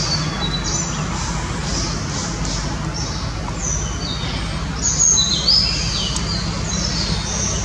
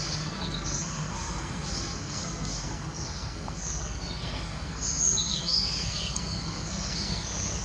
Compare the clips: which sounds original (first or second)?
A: first